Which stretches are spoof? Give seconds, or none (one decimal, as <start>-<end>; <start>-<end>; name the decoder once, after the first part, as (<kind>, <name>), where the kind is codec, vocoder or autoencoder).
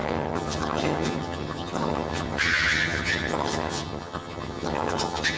0.0-5.4 (vocoder, HiFi-GAN)